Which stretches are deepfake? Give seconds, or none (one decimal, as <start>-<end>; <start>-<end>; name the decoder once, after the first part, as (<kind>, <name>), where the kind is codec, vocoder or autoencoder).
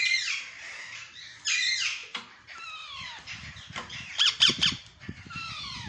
2.0-5.5 (vocoder, BigVGAN v2)